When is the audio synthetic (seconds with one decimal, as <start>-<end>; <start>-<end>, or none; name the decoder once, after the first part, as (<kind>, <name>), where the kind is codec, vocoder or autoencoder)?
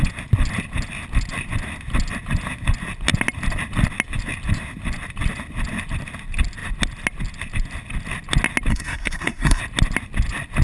8.7-9.6 (codec, SNAC)